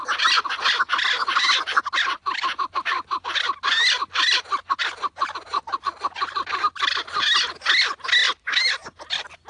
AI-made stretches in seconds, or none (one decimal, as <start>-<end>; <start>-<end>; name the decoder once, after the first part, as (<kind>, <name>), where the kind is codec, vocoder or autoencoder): none